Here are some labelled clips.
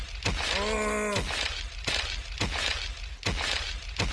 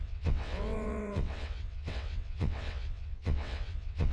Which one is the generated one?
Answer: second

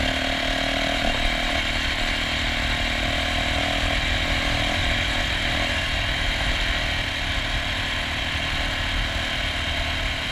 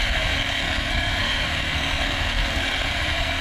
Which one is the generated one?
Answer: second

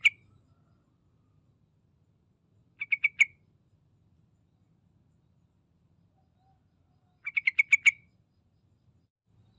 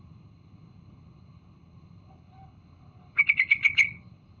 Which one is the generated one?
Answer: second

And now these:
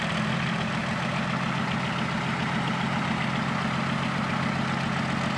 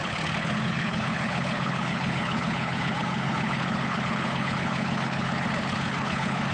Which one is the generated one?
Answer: second